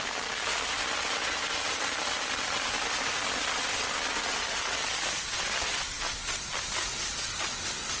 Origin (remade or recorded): recorded